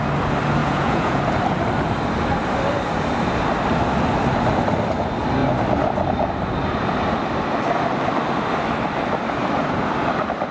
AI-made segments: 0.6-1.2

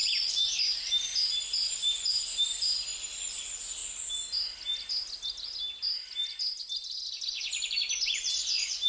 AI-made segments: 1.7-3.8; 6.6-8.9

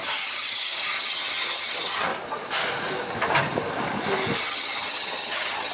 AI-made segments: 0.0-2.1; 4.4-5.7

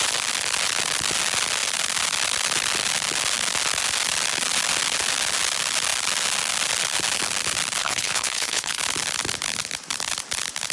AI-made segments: 7.8-8.8

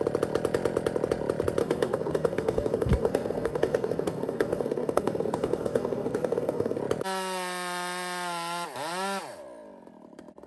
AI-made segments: 1.6-6.8